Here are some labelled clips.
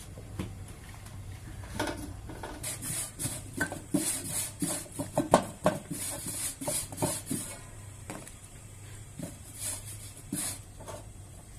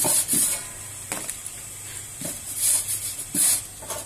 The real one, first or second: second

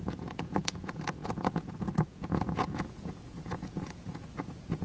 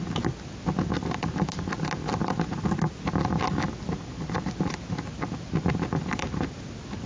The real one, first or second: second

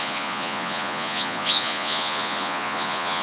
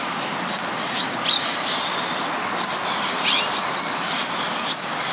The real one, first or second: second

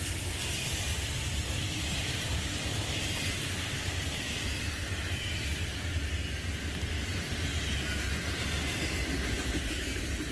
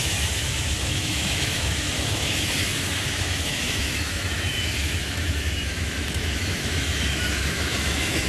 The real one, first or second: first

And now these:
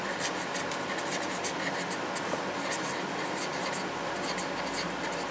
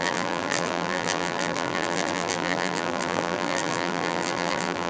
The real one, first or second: first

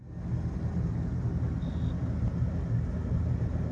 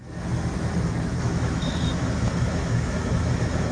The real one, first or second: first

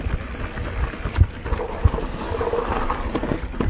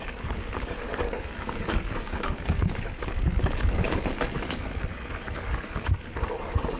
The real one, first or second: first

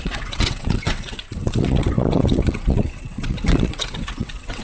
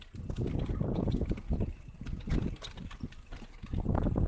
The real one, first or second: second